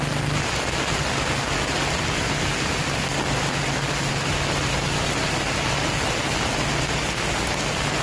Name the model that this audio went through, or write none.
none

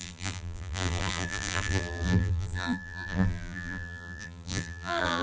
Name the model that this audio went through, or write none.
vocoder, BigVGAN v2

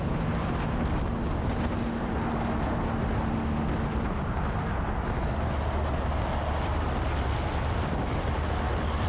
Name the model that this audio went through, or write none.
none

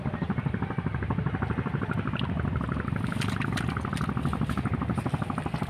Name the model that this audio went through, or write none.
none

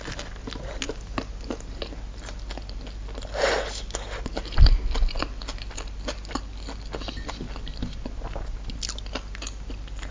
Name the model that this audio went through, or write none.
none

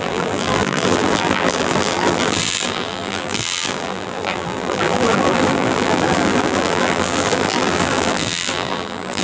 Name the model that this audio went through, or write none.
vocoder, BigVGAN v2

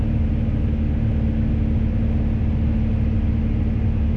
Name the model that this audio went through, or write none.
none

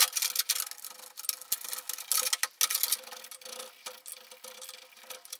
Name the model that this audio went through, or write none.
none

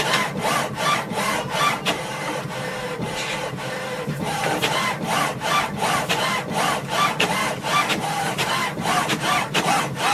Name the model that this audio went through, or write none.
vocoder, BigVGAN v2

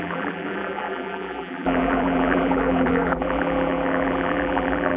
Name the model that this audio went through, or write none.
vocoder, BigVGAN v2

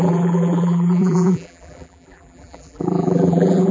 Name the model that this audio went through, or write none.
vocoder, BigVGAN v2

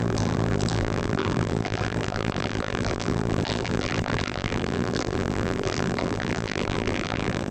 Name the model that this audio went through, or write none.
vocoder, BigVGAN v2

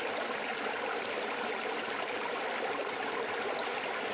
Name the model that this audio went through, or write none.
vocoder, BigVGAN v2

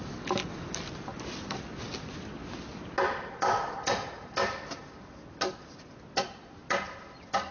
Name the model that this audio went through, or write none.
none